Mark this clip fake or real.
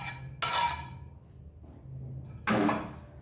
real